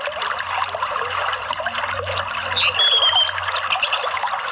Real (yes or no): yes